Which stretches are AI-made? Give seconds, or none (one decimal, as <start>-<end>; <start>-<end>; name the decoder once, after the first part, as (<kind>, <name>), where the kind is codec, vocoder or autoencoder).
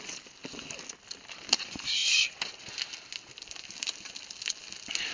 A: none